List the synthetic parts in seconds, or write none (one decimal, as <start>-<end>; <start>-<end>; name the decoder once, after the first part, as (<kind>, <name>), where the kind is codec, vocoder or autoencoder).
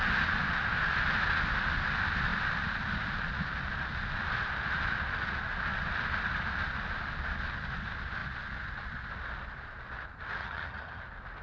10.4-11.0 (vocoder, HiFi-GAN)